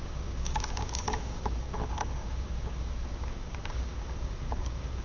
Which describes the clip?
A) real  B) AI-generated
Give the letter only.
B